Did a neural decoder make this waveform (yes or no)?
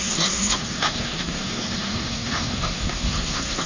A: yes